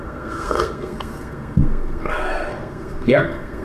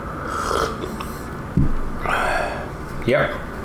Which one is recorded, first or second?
second